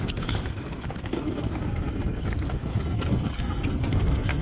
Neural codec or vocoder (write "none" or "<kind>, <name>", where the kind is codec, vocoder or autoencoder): codec, SNAC